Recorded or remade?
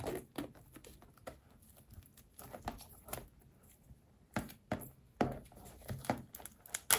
recorded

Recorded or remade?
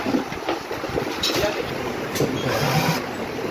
recorded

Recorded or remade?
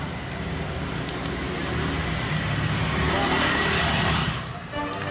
remade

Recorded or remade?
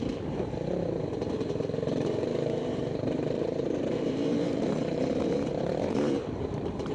remade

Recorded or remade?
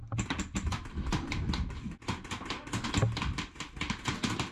recorded